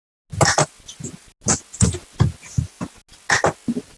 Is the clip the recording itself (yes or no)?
yes